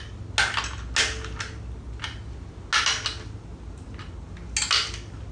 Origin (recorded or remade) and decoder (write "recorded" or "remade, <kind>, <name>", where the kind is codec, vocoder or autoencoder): recorded